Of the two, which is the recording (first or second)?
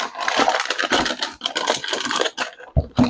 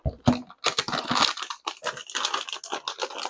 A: second